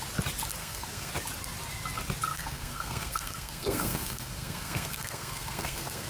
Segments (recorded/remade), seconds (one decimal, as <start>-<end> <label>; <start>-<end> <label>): 0.0-0.6 recorded; 0.6-1.1 remade; 1.1-2.3 recorded; 2.3-6.1 remade